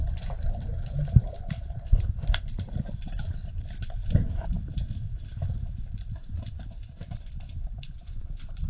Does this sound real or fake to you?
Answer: fake